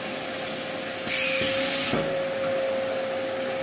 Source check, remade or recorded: recorded